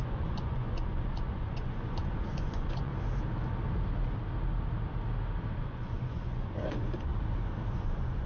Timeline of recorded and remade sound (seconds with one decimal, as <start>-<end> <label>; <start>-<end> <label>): 0.0-2.9 remade; 2.9-5.6 recorded; 5.6-7.1 remade; 7.1-7.7 recorded; 7.7-8.3 remade

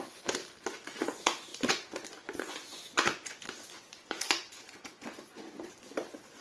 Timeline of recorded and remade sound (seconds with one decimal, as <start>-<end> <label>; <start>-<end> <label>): 0.0-0.4 remade; 0.4-1.0 recorded; 1.0-6.4 remade